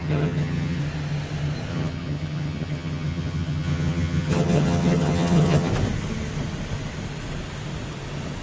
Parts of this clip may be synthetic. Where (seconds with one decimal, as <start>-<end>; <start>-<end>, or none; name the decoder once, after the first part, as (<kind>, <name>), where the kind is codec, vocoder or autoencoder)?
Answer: 0.0-0.8 (vocoder, HiFi-GAN); 1.7-5.7